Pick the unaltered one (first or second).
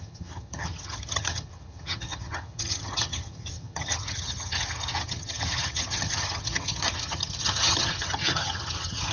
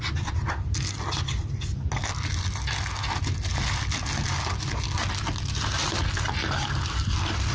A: second